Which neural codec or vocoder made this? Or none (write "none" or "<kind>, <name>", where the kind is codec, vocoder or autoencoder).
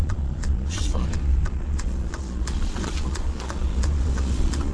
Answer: vocoder, Vocos